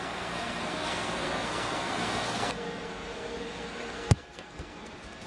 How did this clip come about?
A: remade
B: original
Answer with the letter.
A